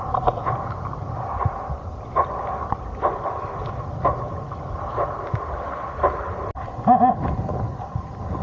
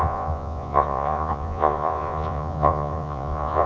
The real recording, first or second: first